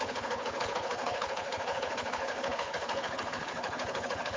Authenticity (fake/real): fake